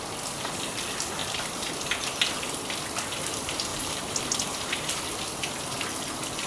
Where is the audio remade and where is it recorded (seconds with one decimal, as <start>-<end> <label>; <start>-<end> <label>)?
0.0-1.2 recorded; 1.2-1.7 remade; 1.7-3.7 recorded; 3.7-5.0 remade; 5.0-6.5 recorded